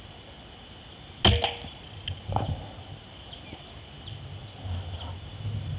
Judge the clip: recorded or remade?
recorded